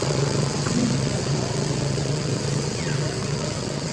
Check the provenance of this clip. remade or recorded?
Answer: remade